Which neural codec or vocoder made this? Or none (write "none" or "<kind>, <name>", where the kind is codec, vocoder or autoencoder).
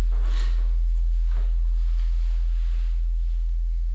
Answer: none